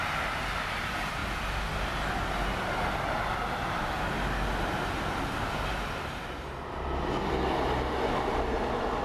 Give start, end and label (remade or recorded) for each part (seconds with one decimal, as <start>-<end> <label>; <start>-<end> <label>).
0.0-9.0 recorded